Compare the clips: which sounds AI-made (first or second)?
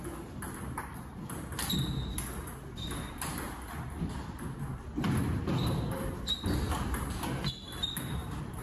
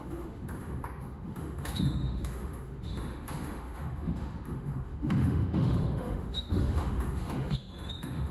second